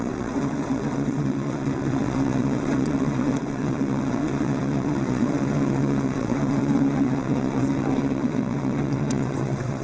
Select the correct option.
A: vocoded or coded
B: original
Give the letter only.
A